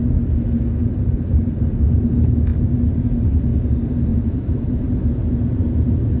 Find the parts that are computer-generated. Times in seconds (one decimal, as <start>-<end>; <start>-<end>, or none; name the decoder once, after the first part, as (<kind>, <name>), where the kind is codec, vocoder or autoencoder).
0.8-2.1 (vocoder, BigVGAN v2); 4.1-5.1